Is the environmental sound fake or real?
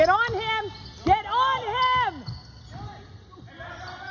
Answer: real